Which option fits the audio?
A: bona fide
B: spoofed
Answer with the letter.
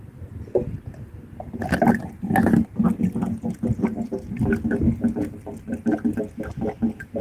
A